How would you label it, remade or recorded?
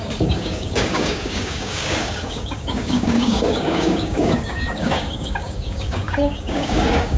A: remade